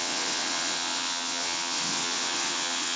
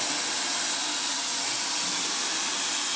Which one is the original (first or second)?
second